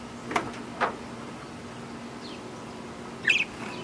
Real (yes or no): yes